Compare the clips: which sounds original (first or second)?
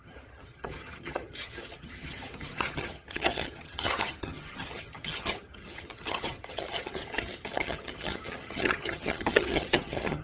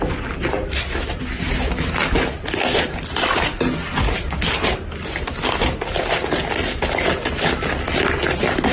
second